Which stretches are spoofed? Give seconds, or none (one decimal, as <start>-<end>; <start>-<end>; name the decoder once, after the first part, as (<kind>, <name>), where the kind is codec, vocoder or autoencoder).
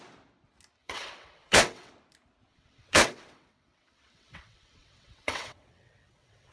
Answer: 0.8-1.9 (vocoder, WaveNeXt); 2.5-6.5